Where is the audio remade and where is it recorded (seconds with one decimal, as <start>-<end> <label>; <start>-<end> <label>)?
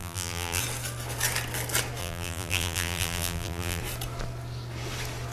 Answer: 0.0-0.6 remade; 0.6-2.0 recorded; 2.0-3.8 remade; 3.8-5.3 recorded